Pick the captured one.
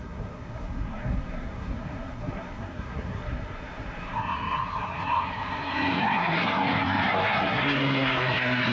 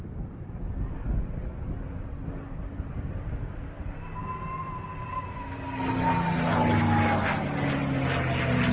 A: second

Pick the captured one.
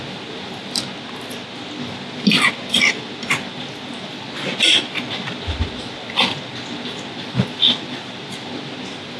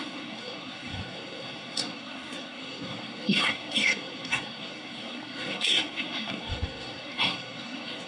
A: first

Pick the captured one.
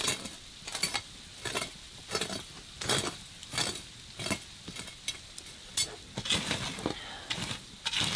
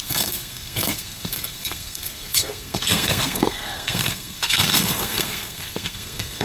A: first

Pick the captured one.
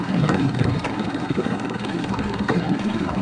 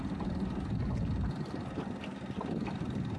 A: second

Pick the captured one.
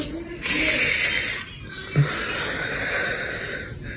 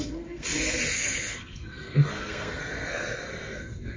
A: first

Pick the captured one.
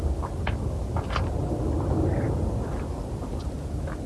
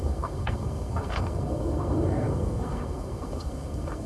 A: first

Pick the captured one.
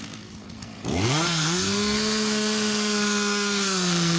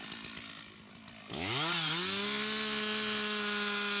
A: second